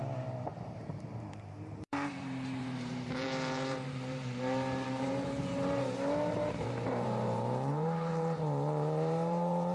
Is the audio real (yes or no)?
no